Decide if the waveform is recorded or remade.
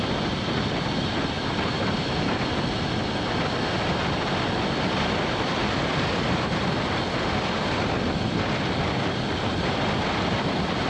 recorded